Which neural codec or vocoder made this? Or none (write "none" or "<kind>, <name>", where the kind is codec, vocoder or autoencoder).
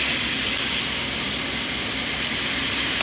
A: none